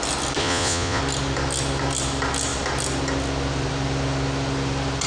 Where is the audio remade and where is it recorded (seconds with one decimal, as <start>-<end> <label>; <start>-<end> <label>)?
0.0-0.4 recorded; 0.4-1.0 remade; 1.0-5.1 recorded